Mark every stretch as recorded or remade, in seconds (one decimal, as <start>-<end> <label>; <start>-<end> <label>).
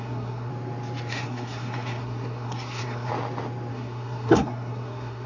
0.0-0.5 remade; 0.5-1.1 recorded; 1.1-3.1 remade; 3.1-3.7 recorded; 3.7-5.3 remade